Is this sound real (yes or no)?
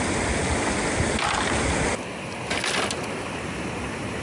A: yes